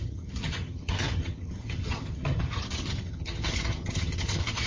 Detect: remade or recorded remade